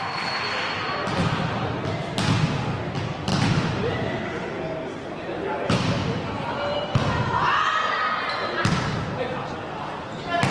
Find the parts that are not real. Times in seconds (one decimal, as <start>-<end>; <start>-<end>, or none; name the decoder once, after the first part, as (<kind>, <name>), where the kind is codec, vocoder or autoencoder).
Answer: 3.3-4.2 (vocoder, BigVGAN v2)